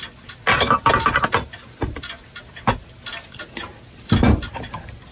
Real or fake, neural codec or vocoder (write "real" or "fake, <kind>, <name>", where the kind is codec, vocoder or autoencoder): real